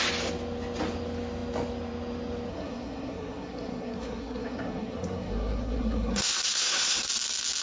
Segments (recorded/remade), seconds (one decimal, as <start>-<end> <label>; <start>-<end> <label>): 0.0-2.5 recorded; 2.5-7.1 remade; 7.1-7.6 recorded